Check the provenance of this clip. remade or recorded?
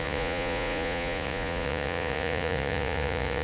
remade